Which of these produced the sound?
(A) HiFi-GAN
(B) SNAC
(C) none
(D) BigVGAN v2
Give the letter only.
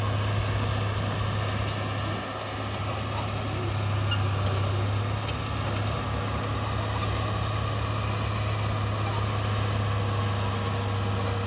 C